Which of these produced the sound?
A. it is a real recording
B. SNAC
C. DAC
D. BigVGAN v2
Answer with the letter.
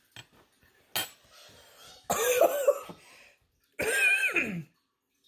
A